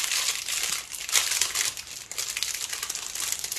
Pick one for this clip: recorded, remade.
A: remade